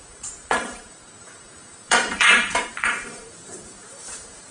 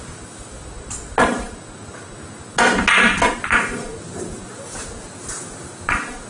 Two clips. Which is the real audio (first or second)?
second